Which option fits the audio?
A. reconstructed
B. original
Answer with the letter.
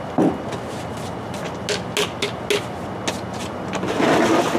B